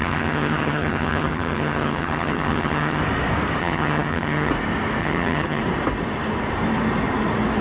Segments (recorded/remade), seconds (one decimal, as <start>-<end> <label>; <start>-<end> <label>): 0.0-3.0 remade; 3.0-3.6 recorded; 3.6-4.5 remade; 4.5-5.0 recorded; 5.0-5.6 remade; 5.6-7.6 recorded